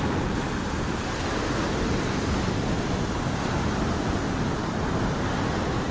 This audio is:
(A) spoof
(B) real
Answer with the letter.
B